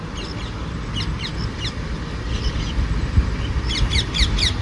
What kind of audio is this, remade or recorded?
recorded